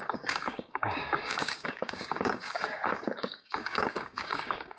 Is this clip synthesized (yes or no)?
yes